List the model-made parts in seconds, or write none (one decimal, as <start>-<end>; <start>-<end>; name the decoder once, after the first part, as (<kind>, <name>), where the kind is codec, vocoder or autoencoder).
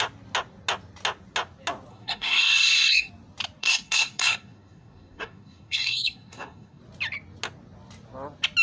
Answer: 1.9-3.1 (codec, SNAC); 3.6-6.8